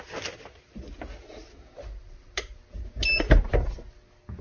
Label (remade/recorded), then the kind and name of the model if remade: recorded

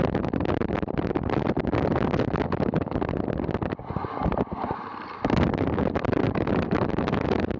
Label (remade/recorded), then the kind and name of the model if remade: recorded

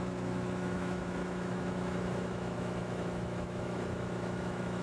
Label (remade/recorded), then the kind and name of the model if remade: remade, autoencoder, DAC-VAE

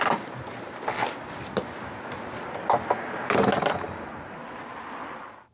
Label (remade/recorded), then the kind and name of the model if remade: recorded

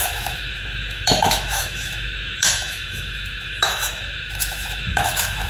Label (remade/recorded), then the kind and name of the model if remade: remade, autoencoder, DAC-VAE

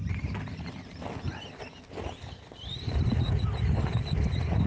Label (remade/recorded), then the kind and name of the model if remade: recorded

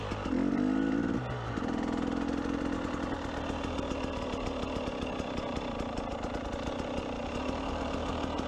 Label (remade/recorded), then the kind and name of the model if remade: recorded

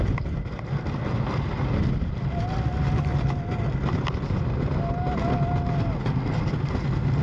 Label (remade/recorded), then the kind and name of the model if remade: recorded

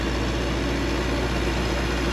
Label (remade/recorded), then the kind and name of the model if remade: recorded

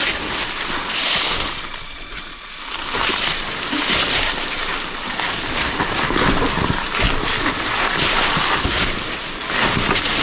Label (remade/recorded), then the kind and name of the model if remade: recorded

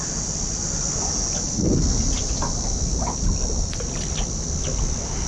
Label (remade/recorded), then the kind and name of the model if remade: recorded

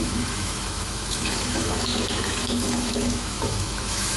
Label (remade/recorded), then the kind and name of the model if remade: remade, autoencoder, DAC-VAE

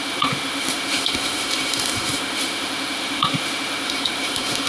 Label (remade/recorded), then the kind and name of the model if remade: remade, autoencoder, DAC-VAE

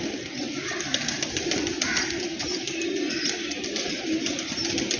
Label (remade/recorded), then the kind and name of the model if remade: recorded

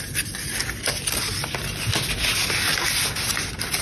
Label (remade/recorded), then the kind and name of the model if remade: recorded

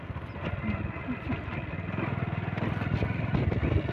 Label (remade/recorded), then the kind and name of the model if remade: recorded